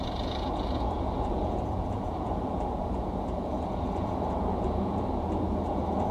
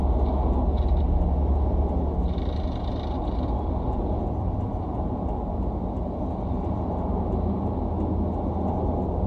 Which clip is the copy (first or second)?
first